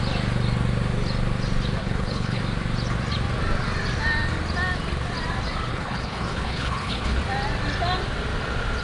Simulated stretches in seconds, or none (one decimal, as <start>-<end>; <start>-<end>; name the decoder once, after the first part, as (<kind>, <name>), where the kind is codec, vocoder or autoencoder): 1.8-2.4 (codec, HILCodec); 5.7-7.2